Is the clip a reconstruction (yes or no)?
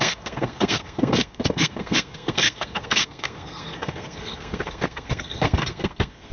yes